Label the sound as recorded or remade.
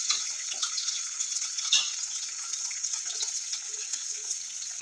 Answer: remade